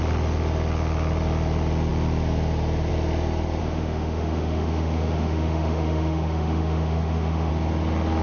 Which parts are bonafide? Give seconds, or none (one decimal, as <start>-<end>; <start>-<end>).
0.0-3.6; 7.5-8.2